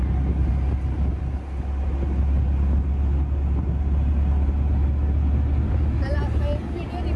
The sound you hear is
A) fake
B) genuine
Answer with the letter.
B